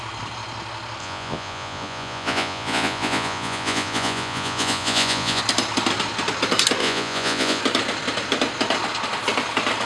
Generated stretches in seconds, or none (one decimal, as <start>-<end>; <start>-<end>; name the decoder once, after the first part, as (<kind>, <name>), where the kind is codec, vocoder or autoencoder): 1.0-5.4 (vocoder, Vocos); 6.8-7.6

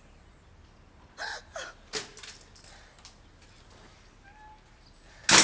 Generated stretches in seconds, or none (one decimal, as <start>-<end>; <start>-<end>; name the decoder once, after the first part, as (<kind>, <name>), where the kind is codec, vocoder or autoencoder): none

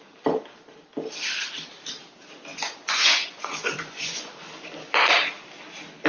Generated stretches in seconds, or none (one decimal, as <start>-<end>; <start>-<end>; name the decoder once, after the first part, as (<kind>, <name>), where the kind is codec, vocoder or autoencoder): 2.5-4.3 (vocoder, Vocos)

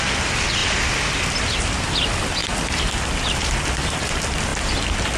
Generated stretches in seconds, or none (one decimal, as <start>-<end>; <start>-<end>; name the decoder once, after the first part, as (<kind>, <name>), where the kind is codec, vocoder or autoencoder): none